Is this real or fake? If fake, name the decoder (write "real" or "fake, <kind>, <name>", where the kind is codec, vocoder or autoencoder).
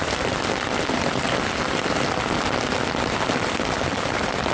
real